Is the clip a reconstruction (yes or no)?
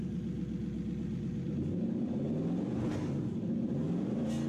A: no